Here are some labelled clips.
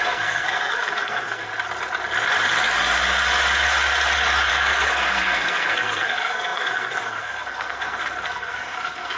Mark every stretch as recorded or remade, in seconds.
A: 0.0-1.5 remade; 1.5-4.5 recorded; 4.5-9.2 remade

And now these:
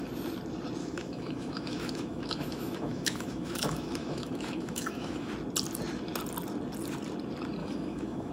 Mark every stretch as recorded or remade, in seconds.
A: 0.0-0.8 recorded; 0.8-5.3 remade; 5.3-7.6 recorded; 7.6-8.3 remade